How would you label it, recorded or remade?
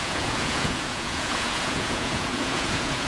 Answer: remade